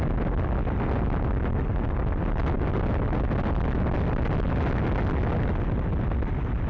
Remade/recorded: recorded